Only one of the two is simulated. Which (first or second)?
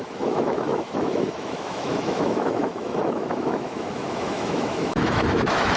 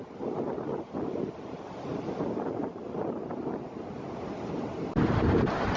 first